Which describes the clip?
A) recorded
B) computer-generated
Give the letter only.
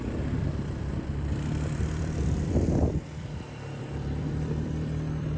B